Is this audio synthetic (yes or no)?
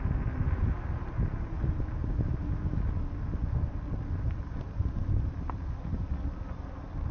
no